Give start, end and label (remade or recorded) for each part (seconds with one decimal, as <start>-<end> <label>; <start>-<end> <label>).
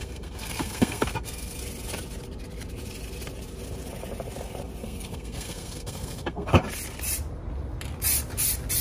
0.0-1.6 remade; 1.6-4.8 recorded; 4.8-6.6 remade; 6.6-8.8 recorded